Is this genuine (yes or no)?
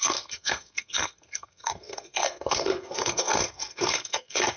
no